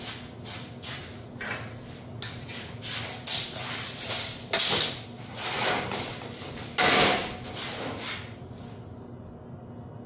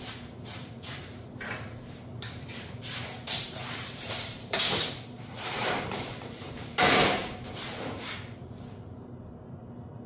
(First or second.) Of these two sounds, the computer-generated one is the second